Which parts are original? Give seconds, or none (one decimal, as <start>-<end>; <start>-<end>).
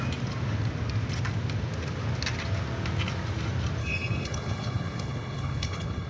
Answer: 0.0-3.8